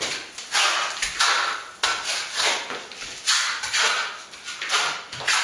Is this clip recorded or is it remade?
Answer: recorded